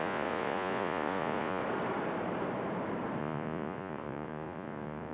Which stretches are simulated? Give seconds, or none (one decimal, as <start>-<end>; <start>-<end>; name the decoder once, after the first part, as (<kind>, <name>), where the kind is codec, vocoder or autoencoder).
0.0-1.6 (vocoder, Vocos); 3.2-5.1